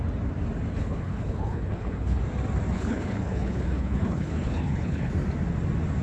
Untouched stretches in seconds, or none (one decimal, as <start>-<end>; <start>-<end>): 0.0-0.7; 2.2-2.7; 5.1-6.0